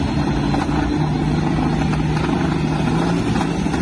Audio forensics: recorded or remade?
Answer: recorded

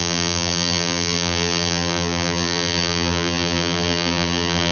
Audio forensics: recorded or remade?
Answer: remade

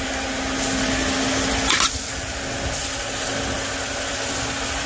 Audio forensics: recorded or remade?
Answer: recorded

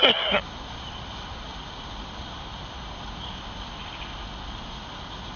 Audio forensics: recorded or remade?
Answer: recorded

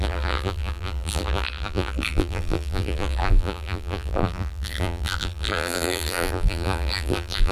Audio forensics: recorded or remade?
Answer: remade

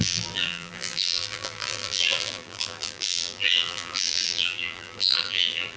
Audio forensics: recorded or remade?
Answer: remade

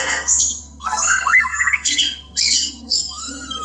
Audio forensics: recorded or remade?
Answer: remade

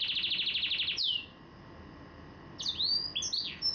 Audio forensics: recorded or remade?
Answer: recorded